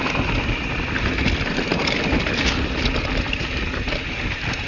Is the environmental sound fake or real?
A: real